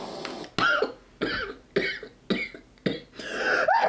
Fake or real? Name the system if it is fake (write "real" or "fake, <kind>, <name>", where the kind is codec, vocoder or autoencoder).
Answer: real